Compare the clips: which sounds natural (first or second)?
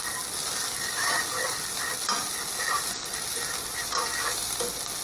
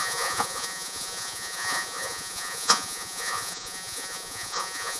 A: first